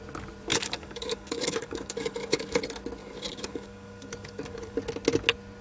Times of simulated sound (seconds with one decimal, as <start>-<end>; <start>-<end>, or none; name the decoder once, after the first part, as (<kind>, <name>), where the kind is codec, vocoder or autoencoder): 0.5-2.6 (codec, DAC); 3.0-4.8